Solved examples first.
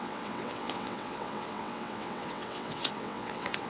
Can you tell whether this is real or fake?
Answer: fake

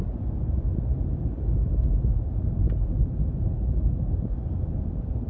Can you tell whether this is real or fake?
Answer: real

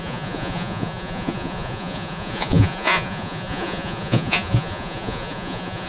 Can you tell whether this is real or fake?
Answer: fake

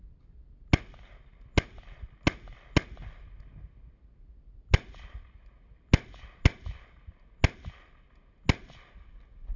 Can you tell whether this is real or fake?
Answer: real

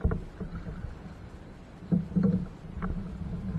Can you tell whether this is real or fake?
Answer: fake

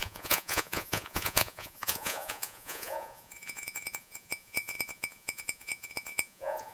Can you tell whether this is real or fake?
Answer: fake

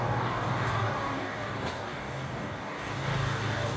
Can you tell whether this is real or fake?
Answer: fake